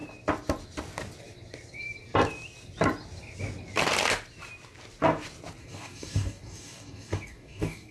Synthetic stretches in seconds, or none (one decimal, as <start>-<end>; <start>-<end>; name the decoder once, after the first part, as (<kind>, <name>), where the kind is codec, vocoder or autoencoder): 5.6-7.9 (codec, DAC)